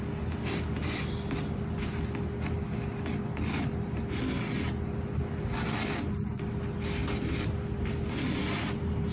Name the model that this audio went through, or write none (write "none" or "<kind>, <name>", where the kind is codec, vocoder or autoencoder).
none